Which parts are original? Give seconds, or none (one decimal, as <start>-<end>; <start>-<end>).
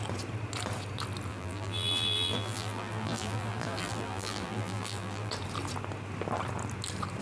0.0-1.3; 5.3-7.2